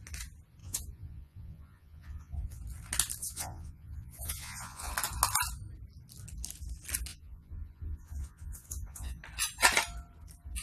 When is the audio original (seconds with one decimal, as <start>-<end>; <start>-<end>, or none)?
0.0-0.6; 2.6-3.2; 4.9-7.1; 9.2-10.6